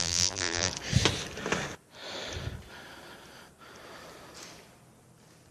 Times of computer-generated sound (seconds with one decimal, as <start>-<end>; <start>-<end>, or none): 0.0-0.7